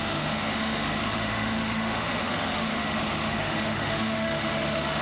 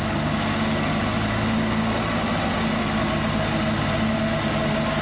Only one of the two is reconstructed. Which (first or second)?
first